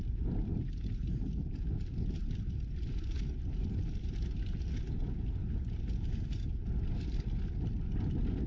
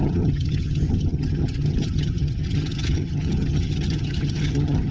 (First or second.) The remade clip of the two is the second